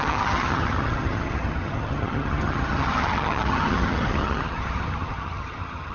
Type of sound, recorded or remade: remade